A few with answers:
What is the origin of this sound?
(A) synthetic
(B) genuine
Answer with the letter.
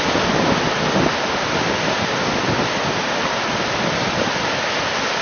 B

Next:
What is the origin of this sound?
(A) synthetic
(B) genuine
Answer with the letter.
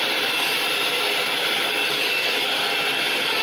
B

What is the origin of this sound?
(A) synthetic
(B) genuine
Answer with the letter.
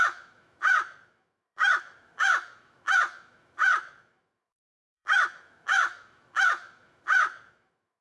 A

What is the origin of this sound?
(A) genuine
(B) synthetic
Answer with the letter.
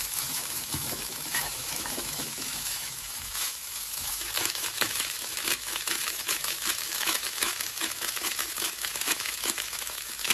B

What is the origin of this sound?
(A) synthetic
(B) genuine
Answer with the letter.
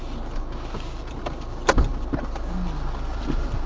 B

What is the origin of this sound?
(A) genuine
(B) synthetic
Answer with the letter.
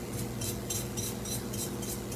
A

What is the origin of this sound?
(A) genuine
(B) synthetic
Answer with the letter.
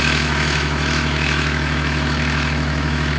B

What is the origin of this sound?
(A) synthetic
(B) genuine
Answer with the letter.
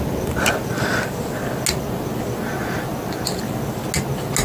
B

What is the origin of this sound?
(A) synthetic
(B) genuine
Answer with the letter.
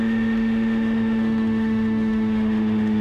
A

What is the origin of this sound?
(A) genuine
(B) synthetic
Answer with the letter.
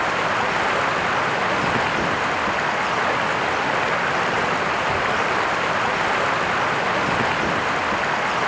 A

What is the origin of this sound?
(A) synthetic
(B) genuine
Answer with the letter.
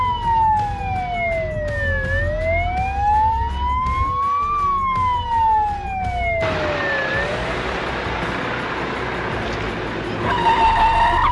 B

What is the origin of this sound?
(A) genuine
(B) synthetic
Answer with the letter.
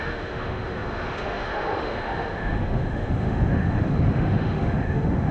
B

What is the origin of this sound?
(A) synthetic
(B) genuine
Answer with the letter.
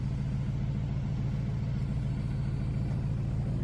B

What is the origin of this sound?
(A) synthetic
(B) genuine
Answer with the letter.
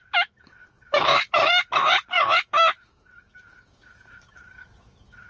A